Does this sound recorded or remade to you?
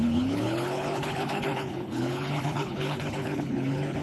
remade